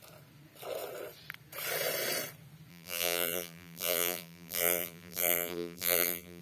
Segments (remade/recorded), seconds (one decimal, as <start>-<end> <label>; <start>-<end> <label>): 0.0-2.7 recorded; 2.7-6.4 remade